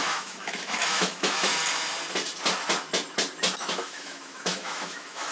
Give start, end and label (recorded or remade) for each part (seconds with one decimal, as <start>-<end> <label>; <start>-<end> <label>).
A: 0.0-1.5 remade; 1.5-3.6 recorded; 3.6-5.3 remade